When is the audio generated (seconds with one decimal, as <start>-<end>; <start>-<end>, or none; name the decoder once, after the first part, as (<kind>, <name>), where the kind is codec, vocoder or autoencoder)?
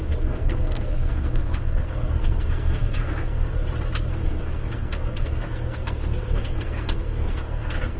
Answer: 0.0-3.6 (codec, SNAC); 4.1-8.0